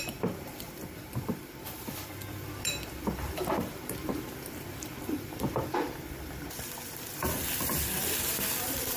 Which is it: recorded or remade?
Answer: remade